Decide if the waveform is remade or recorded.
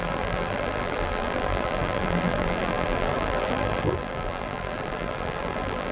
remade